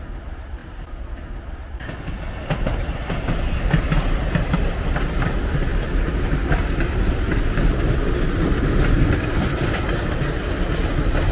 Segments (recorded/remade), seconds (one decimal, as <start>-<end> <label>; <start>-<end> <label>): 0.0-11.3 recorded